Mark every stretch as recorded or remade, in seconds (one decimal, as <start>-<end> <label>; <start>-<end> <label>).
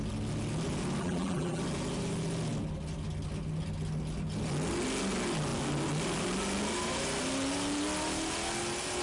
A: 0.0-1.0 recorded; 1.0-1.6 remade; 1.6-9.0 recorded